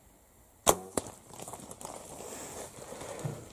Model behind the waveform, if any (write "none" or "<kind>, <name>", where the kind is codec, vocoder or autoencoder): none